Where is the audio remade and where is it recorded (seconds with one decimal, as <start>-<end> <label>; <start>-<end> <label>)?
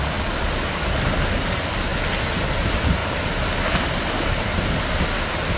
0.0-1.9 remade; 1.9-2.5 recorded; 2.5-3.0 remade; 3.0-3.9 recorded; 3.9-5.6 remade